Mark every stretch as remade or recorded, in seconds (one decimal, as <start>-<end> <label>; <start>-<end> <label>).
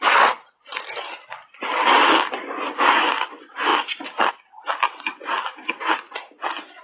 0.0-6.8 recorded